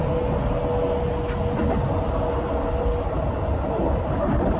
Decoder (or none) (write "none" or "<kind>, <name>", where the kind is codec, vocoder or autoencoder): none